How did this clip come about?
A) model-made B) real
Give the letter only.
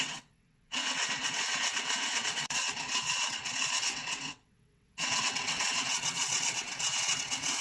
A